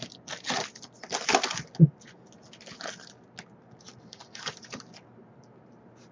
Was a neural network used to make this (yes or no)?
no